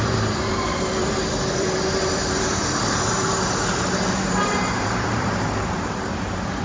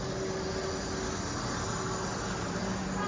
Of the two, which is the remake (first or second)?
first